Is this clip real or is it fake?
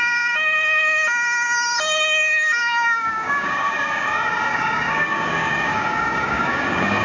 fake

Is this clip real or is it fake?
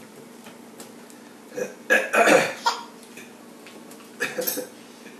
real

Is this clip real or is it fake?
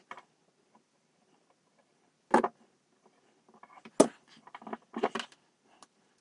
real